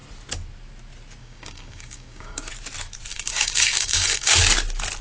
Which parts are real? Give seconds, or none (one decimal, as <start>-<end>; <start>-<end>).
0.0-1.2; 2.5-3.1; 4.4-5.0